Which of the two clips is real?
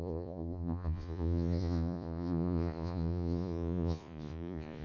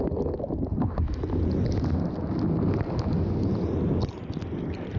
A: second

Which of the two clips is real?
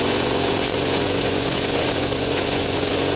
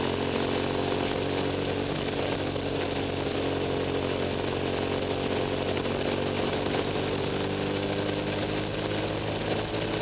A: second